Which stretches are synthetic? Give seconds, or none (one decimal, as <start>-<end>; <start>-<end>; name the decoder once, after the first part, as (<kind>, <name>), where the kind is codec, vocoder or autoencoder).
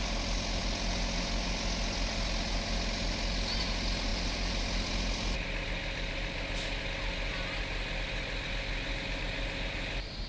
none